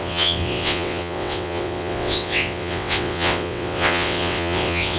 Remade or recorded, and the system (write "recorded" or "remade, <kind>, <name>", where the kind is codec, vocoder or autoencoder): remade, vocoder, WaveNeXt